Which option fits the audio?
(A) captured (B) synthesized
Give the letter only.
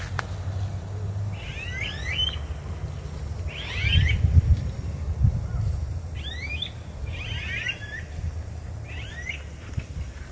A